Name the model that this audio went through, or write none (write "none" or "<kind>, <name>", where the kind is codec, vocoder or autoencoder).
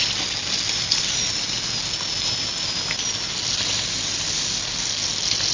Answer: none